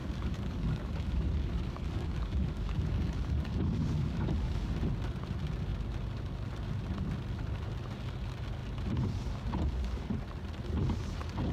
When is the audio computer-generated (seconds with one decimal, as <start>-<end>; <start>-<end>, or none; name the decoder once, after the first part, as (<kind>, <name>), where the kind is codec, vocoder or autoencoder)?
0.0-4.7 (codec, DAC)